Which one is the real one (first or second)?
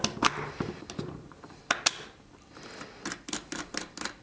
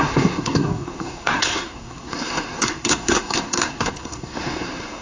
first